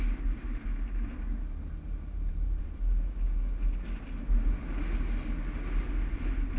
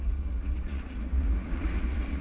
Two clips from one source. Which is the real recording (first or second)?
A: first